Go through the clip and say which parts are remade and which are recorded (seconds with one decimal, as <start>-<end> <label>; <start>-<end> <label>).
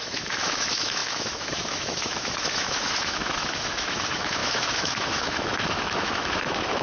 0.0-6.8 remade